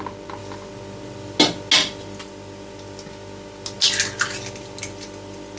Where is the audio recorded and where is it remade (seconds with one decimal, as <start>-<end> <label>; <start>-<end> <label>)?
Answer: 0.0-5.6 recorded